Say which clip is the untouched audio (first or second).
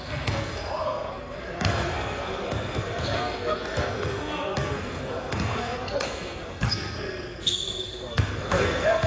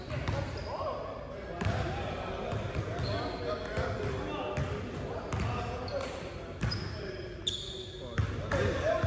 second